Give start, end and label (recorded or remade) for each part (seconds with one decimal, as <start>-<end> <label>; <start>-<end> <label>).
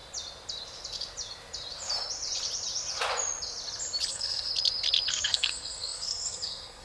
0.0-4.1 recorded; 4.1-4.5 remade; 4.5-5.1 recorded; 5.1-6.8 remade